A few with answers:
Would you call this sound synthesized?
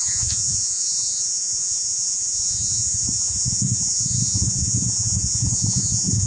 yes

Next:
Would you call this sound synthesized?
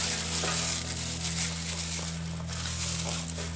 no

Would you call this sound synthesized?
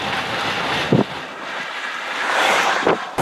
no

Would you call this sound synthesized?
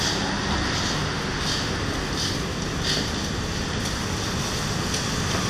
no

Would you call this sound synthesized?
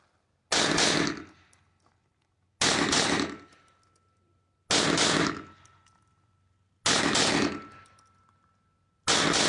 no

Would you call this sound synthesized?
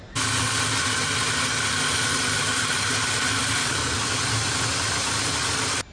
no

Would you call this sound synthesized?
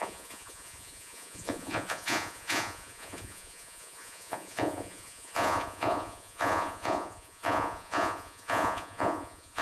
yes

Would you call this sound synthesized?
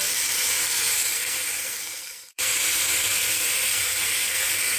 yes